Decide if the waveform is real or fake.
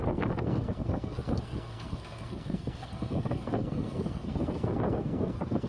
fake